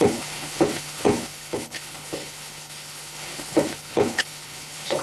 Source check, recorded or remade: remade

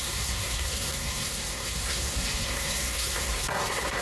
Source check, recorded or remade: remade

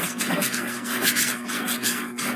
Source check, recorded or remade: remade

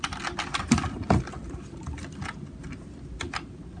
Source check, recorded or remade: recorded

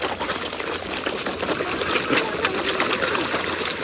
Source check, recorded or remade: recorded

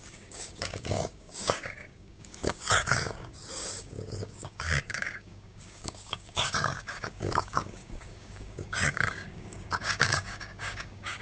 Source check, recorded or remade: remade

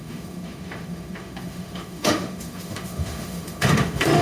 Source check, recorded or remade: remade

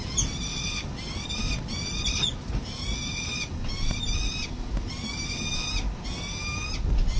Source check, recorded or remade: recorded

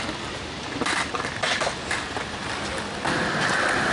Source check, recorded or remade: recorded